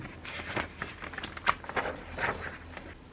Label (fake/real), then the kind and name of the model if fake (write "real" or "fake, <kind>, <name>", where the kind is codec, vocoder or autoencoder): real